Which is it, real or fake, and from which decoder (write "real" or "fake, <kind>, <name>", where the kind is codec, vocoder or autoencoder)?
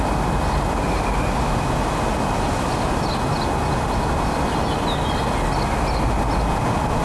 real